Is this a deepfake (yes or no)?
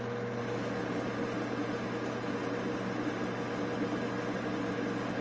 no